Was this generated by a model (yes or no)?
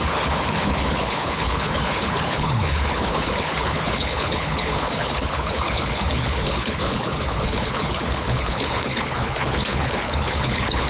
yes